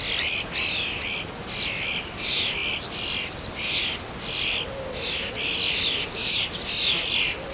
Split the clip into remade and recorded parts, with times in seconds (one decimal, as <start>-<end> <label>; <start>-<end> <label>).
0.0-7.5 recorded